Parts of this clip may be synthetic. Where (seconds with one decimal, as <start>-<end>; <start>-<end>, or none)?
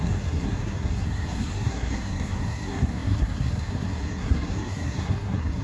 0.0-5.6